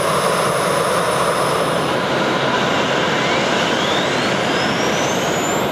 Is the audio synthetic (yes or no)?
no